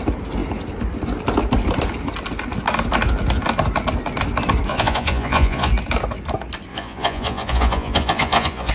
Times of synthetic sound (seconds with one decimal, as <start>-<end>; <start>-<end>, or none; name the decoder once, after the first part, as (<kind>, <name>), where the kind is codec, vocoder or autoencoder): 4.7-5.7 (vocoder, Vocos); 6.7-8.7